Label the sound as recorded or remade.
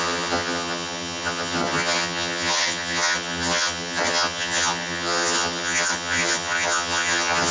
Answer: remade